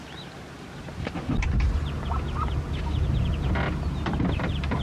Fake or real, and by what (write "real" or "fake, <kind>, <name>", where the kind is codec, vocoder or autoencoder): real